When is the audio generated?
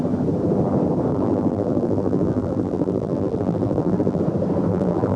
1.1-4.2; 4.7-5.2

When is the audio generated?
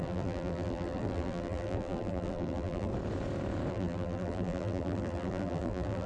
0.0-2.9; 3.7-6.1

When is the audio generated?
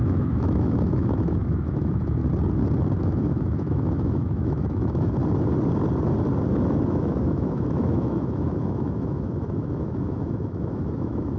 0.0-2.2; 3.0-5.2; 6.9-11.4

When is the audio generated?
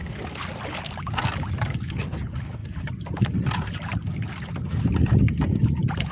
none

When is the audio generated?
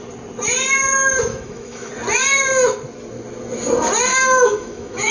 1.3-1.9; 4.1-5.1